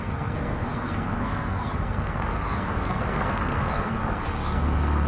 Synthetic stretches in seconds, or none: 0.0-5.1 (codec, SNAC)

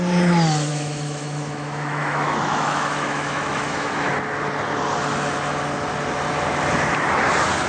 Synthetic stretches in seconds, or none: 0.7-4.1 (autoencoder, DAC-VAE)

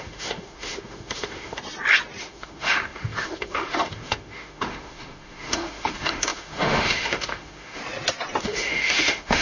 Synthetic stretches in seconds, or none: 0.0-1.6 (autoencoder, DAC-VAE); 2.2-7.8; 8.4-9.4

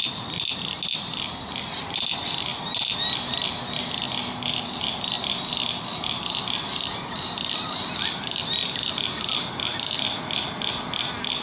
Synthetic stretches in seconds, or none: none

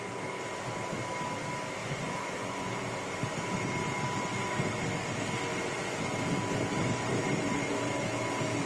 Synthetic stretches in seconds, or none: 1.8-2.9 (vocoder, Vocos); 5.5-6.0

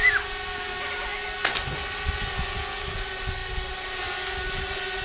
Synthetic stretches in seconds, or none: none

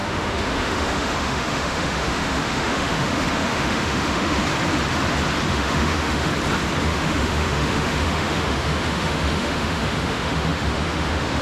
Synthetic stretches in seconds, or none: 0.0-4.4 (autoencoder, DAC-VAE); 5.5-6.3; 6.8-11.4

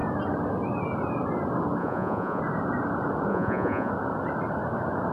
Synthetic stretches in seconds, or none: 1.8-2.4 (vocoder, Vocos); 3.3-3.9